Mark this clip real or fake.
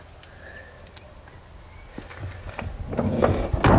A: real